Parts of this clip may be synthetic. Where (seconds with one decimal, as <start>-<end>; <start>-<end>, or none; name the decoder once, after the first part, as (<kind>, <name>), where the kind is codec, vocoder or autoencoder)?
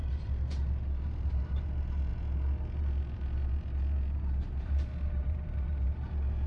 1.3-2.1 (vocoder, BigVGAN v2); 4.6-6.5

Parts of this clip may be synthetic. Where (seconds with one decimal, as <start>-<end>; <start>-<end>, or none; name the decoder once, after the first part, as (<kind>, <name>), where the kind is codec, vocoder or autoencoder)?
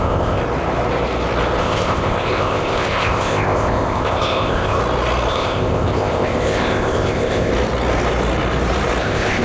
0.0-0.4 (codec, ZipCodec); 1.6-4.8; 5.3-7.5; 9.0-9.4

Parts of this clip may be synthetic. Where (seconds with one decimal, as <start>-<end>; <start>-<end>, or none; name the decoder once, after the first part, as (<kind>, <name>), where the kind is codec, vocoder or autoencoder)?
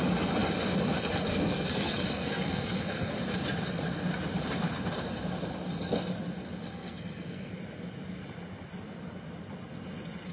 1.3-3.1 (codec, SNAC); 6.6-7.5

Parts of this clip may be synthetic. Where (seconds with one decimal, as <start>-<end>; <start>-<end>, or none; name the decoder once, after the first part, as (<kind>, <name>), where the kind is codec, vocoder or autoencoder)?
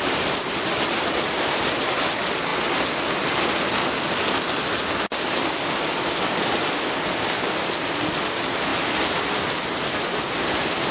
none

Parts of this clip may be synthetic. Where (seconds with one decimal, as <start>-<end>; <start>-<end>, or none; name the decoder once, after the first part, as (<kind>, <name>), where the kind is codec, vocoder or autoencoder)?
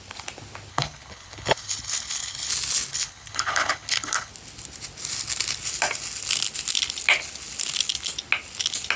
0.7-2.5 (codec, HILCodec); 2.9-4.3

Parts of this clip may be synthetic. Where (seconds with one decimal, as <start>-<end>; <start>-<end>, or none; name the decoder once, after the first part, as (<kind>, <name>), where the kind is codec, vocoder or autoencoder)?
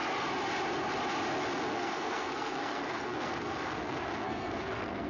1.7-5.1 (codec, SNAC)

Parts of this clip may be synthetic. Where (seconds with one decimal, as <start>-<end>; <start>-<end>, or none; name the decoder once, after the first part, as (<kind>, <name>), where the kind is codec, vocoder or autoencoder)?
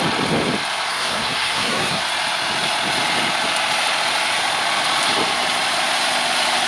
0.9-2.0 (codec, SNAC)